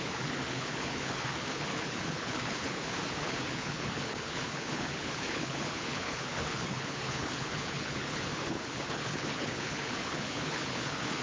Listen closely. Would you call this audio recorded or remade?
remade